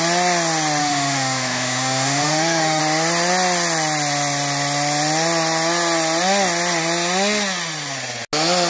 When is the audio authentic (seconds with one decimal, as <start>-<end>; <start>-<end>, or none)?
0.0-0.8; 2.8-8.7